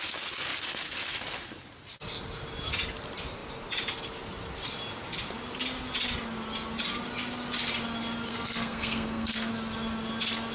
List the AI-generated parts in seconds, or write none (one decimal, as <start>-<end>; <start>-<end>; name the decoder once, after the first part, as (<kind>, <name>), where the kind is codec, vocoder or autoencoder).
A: 8.3-9.5 (codec, SNAC)

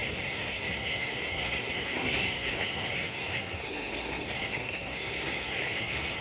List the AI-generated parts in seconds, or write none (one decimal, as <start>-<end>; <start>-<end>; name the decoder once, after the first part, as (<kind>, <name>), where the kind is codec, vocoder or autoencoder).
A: 0.0-6.2 (codec, SNAC)